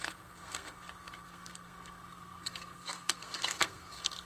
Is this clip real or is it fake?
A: fake